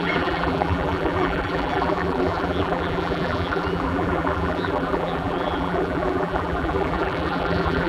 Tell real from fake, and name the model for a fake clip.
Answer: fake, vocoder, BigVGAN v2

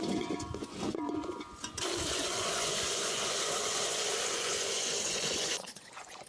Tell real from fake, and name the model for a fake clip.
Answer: fake, vocoder, Vocos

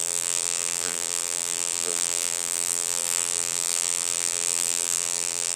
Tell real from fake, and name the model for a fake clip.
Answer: fake, vocoder, BigVGAN v2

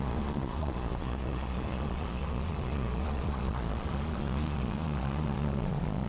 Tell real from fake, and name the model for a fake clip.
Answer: fake, vocoder, Vocos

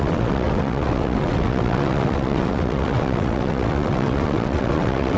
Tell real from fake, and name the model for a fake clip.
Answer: fake, vocoder, WaveNeXt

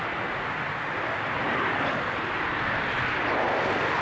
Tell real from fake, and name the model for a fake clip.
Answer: real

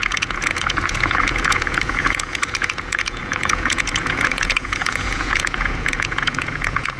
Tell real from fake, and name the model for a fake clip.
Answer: fake, vocoder, Vocos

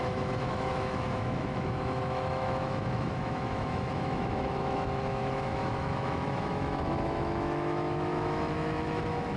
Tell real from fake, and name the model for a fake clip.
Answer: fake, autoencoder, DAC-VAE